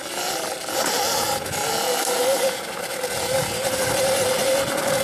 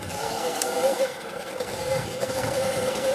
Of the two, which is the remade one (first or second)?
second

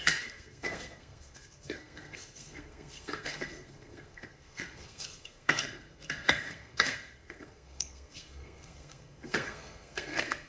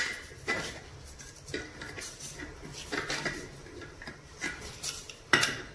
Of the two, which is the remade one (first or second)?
first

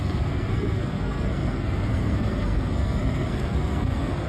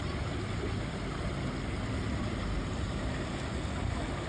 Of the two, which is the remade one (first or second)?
first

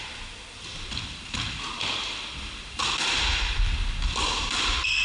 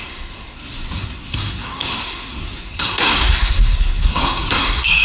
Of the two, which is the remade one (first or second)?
second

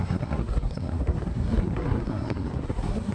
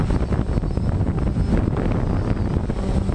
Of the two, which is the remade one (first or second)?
first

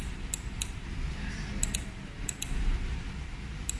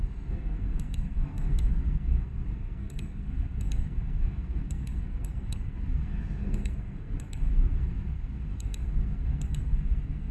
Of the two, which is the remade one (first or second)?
second